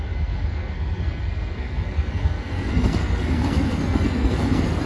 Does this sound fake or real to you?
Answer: fake